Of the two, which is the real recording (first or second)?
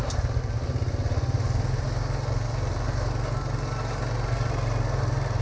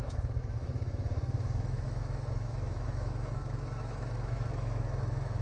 first